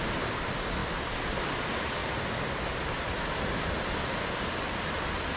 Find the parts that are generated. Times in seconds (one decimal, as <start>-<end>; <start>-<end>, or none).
none